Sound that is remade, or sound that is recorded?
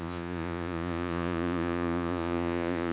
remade